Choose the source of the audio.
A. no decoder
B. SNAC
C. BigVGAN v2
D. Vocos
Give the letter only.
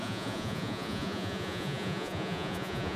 D